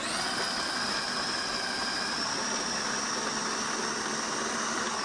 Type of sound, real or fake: real